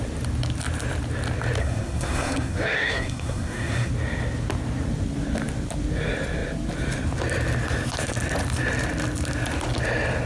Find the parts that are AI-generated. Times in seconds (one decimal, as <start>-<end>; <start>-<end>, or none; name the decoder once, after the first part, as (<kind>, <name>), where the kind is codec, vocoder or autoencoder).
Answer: 1.6-3.9 (codec, SNAC)